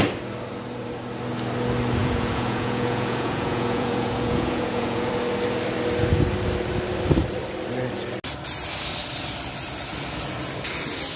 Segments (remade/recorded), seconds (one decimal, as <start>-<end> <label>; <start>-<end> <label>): 0.0-2.0 recorded; 2.0-5.1 remade; 5.1-11.2 recorded